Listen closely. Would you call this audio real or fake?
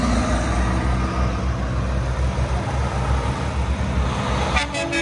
real